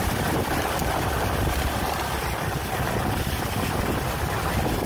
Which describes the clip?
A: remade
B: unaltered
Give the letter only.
B